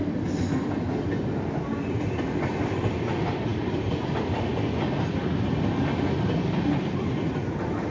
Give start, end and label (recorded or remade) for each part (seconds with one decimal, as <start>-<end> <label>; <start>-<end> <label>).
0.0-7.9 recorded